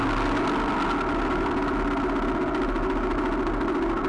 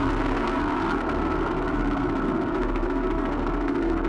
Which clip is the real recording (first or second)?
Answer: first